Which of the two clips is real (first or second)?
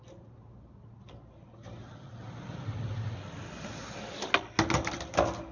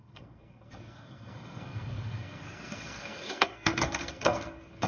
first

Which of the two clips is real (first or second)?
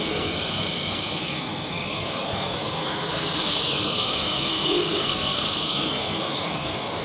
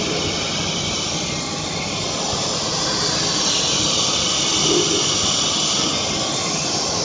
second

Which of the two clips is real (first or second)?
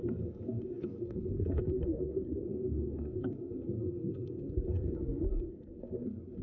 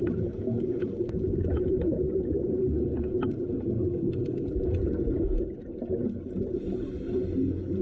second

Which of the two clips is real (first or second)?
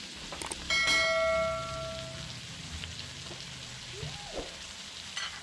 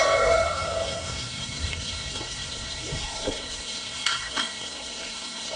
first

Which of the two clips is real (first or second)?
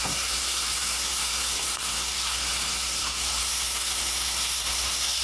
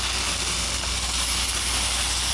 second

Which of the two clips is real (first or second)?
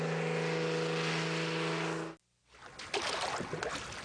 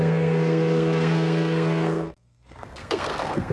first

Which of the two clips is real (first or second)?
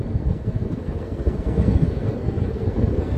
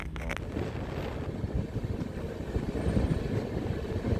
second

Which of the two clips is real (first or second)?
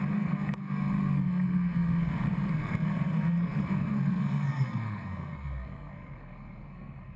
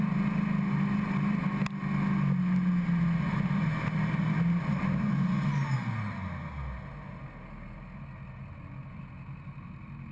second